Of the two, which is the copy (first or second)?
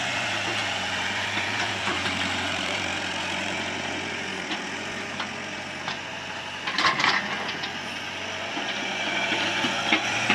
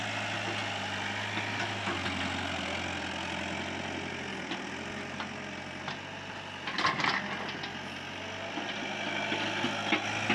first